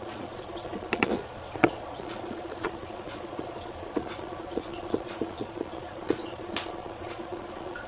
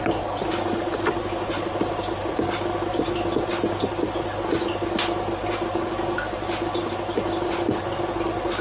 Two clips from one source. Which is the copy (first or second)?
first